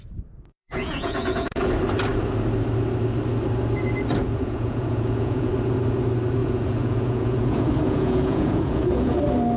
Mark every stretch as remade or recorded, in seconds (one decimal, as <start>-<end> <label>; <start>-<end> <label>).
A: 0.0-0.5 recorded; 0.5-1.7 remade; 1.7-4.2 recorded; 4.2-5.5 remade; 5.5-6.4 recorded; 6.4-9.2 remade; 9.2-9.6 recorded